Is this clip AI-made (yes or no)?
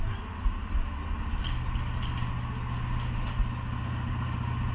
no